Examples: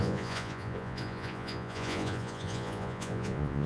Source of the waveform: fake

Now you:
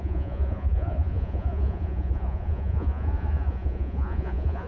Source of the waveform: fake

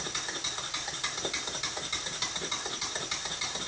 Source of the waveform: real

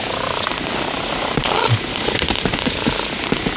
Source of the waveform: real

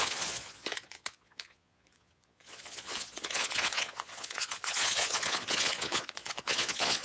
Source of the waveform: fake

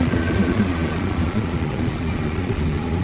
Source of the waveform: fake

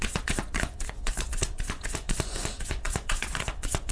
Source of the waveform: fake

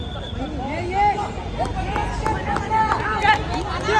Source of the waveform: real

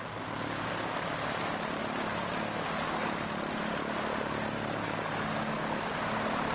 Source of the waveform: real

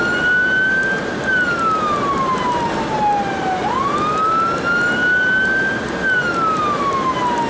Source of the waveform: real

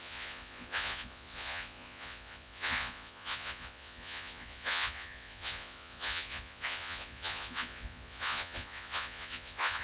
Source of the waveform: fake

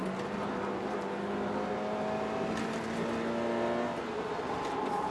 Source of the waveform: real